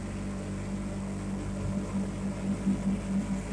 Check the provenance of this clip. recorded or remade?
recorded